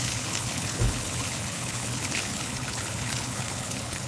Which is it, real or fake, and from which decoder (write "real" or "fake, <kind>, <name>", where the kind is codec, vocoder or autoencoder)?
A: fake, codec, HILCodec